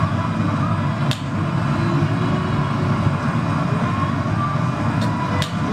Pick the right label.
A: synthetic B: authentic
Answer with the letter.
B